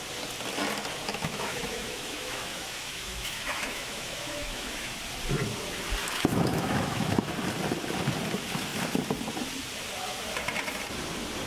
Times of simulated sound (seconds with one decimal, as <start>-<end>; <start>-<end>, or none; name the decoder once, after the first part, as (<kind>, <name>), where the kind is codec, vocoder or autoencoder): 1.1-5.0 (autoencoder, DAC-VAE); 6.0-7.3